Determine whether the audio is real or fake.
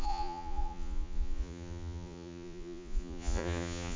fake